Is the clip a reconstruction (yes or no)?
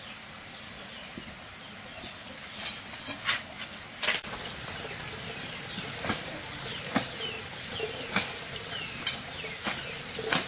no